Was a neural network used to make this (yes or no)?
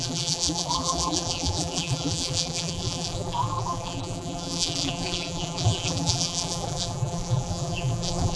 yes